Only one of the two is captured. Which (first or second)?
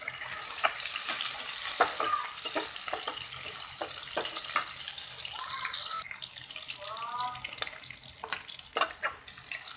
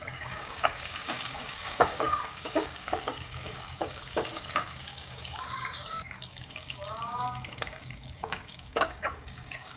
first